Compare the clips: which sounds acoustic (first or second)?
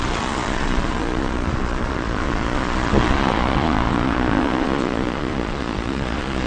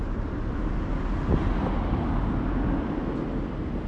second